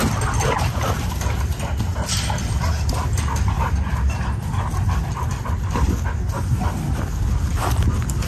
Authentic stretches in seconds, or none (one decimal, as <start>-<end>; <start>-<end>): 0.0-8.3